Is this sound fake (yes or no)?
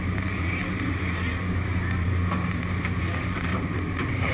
yes